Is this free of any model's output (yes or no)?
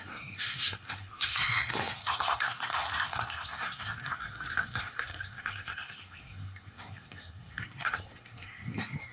no